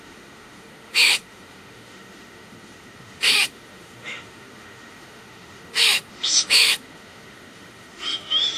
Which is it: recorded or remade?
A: remade